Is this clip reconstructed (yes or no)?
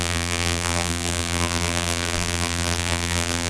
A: yes